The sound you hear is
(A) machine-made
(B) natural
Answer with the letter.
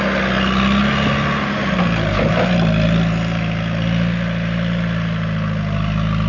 B